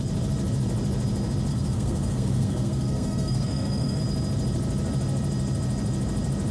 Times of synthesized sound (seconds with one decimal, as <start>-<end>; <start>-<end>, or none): 1.5-4.0